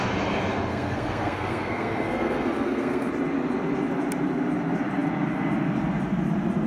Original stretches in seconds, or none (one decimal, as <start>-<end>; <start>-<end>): 0.0-0.7; 3.1-6.7